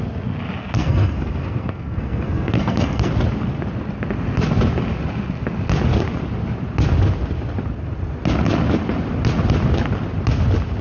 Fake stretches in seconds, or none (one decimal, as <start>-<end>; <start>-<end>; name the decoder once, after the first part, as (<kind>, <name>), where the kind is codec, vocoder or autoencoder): 0.6-3.1 (codec, SNAC)